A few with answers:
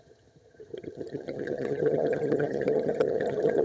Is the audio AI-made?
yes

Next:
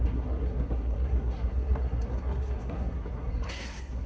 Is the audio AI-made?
yes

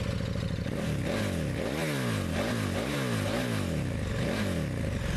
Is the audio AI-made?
no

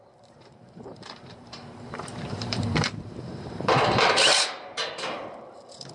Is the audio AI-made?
yes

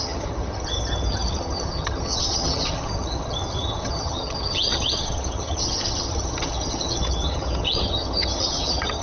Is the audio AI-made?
yes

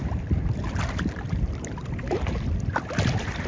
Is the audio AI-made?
yes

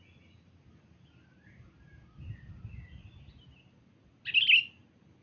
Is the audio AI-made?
no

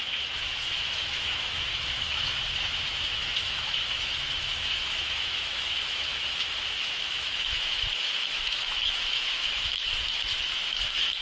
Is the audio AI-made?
yes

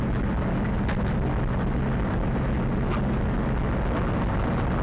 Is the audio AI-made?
no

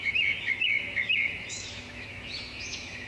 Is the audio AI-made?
yes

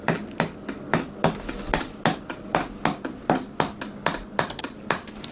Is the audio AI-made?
no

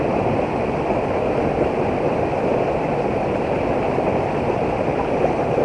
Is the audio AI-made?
no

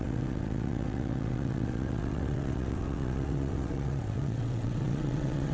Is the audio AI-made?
yes